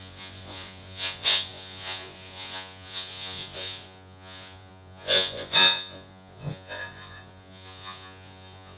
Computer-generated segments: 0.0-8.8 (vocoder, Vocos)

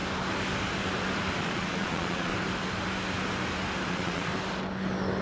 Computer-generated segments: 1.4-2.3 (vocoder, Vocos); 3.9-4.3

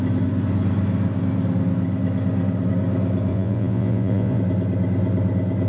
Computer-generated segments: 3.3-4.4 (vocoder, Vocos)